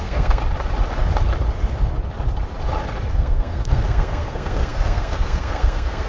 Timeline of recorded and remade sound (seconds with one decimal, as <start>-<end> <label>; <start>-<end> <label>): 0.0-0.4 remade; 0.4-3.1 recorded; 3.1-6.1 remade